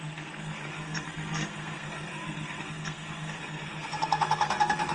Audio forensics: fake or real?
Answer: fake